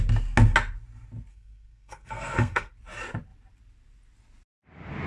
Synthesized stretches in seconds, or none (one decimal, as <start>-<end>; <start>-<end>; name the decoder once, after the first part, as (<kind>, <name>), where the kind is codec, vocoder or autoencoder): 1.3-2.7 (codec, SNAC)